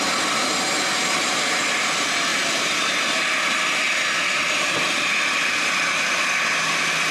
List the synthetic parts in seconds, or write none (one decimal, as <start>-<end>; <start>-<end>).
2.3-6.6